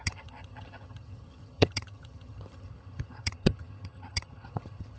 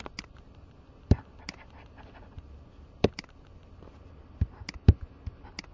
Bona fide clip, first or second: second